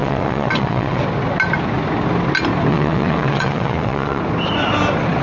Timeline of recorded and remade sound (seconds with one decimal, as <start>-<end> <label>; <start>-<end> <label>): 0.0-1.0 remade; 1.0-2.7 recorded; 2.7-4.2 remade; 4.2-5.2 recorded